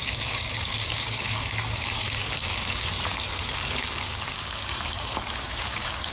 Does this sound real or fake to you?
fake